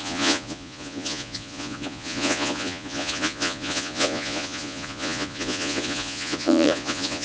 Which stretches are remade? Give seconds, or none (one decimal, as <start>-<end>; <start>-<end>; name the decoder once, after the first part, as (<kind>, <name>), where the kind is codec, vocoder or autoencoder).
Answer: 0.0-7.2 (vocoder, Vocos)